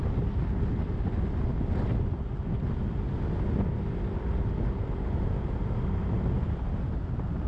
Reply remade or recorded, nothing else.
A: recorded